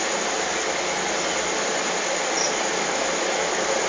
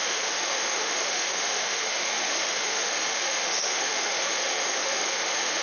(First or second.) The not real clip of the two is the second